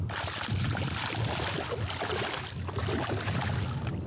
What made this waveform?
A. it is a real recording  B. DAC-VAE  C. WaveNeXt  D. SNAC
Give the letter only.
A